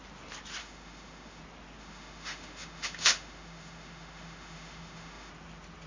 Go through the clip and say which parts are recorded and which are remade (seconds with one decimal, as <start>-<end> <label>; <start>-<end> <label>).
0.0-0.6 recorded; 0.6-1.4 remade; 1.4-1.8 recorded; 1.8-5.3 remade; 5.3-5.9 recorded